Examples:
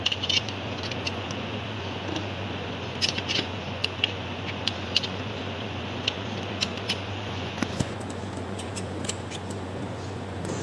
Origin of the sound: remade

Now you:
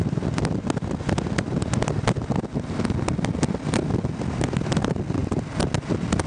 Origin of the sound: recorded